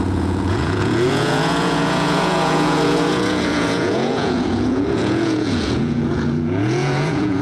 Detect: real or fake fake